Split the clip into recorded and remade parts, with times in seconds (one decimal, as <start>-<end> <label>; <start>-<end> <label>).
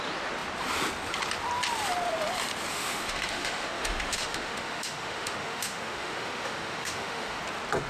0.0-2.7 recorded; 2.7-7.4 remade; 7.4-7.9 recorded